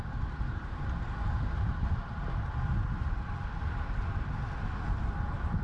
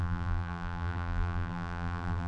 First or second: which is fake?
second